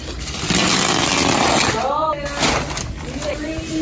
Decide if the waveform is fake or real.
real